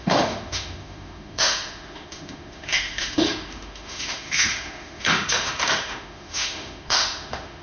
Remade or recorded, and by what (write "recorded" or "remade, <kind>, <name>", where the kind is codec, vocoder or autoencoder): remade, autoencoder, DAC-VAE